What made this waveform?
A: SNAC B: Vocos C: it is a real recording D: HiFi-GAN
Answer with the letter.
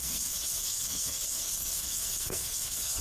A